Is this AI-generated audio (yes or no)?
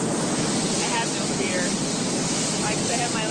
no